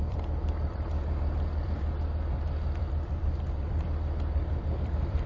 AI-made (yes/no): yes